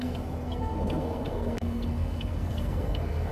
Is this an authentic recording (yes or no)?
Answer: no